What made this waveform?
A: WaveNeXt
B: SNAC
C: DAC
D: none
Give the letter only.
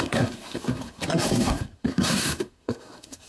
B